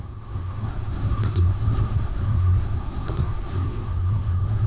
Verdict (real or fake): fake